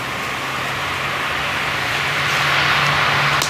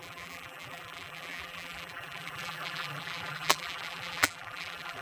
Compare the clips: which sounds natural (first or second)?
first